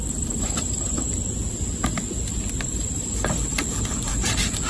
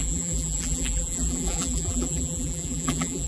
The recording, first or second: first